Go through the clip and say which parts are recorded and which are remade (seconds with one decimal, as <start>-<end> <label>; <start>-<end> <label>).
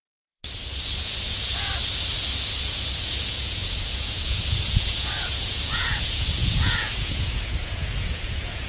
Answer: 0.0-0.4 remade; 0.4-1.0 recorded; 1.0-1.7 remade; 1.7-2.6 recorded; 2.6-8.7 remade